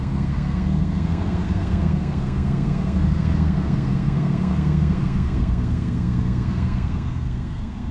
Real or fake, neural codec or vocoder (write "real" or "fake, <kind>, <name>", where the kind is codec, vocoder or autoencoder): fake, codec, SNAC